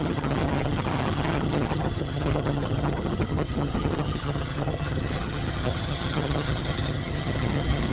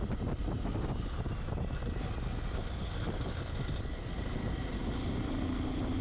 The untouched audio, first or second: second